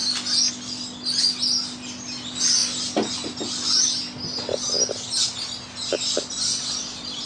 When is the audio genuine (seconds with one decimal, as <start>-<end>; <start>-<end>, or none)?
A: 0.0-7.3